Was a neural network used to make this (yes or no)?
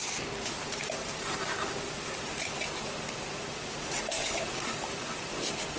no